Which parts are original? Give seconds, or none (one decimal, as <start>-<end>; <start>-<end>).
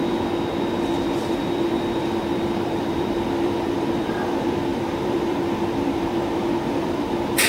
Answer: 0.0-0.9